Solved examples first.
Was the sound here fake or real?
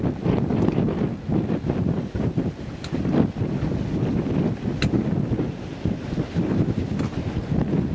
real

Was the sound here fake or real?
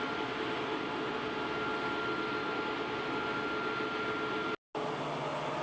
real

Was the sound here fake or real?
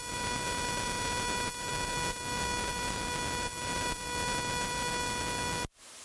real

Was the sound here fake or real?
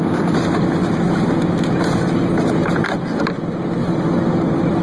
real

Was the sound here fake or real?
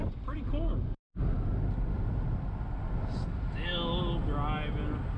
real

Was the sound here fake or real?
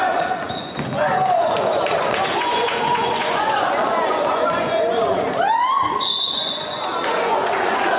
fake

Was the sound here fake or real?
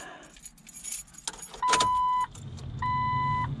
real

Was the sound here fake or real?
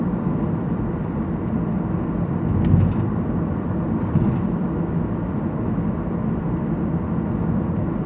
real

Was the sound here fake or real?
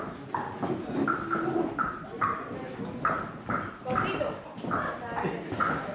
real